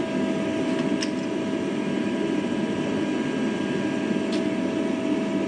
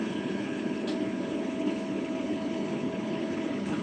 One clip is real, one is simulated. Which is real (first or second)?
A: first